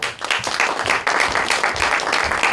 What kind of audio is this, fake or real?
real